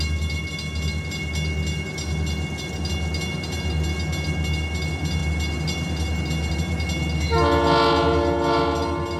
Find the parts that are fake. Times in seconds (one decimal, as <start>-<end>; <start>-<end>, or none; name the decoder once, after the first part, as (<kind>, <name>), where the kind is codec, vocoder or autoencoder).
none